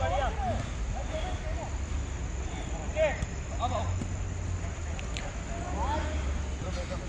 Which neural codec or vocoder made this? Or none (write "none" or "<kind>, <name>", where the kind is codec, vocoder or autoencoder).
none